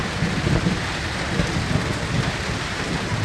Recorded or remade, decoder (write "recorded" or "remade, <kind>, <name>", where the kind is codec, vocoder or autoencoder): recorded